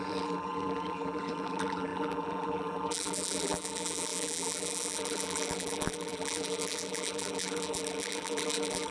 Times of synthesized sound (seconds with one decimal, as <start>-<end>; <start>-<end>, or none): 0.0-8.9